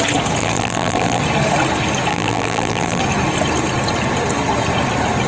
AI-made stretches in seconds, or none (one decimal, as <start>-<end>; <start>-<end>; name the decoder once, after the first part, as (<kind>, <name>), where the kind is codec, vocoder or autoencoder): 0.4-1.2 (vocoder, BigVGAN v2); 2.1-3.0